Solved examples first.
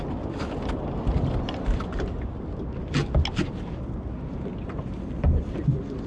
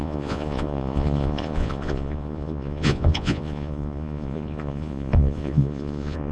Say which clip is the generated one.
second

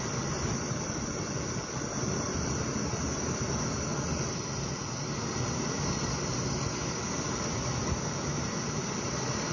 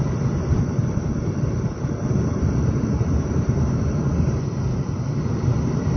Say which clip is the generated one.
second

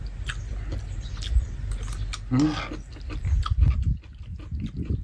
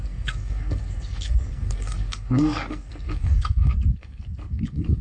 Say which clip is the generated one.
second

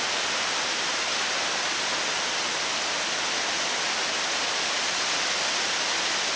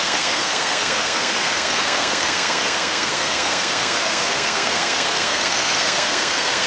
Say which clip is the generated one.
second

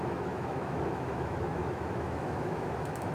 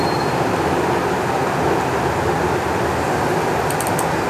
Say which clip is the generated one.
first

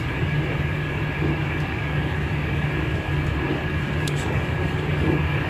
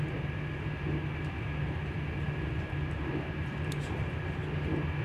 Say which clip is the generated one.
first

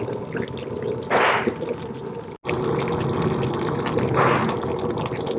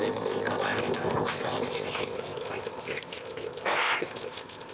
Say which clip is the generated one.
second